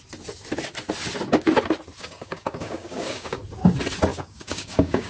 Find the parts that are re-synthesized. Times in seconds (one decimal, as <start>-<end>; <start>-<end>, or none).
2.0-3.4; 4.1-5.1